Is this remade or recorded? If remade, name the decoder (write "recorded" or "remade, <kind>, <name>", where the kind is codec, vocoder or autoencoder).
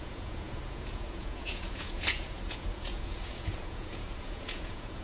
remade, vocoder, Vocos